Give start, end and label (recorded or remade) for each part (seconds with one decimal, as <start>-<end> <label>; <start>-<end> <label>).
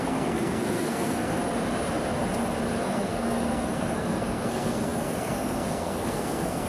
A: 0.0-1.4 remade; 1.4-2.7 recorded; 2.7-6.7 remade